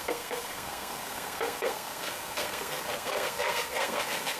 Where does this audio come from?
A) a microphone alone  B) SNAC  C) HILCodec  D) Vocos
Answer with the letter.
B